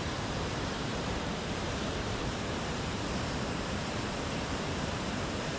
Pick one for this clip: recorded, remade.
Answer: remade